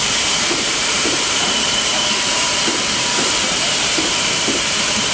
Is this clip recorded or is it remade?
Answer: remade